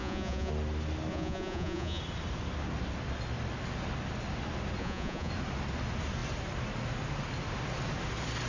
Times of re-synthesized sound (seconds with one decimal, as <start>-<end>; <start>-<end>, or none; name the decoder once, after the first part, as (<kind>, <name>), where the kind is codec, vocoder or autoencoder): 0.0-0.5 (vocoder, Vocos); 1.1-2.0; 4.8-5.3